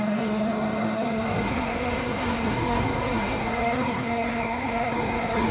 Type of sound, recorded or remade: remade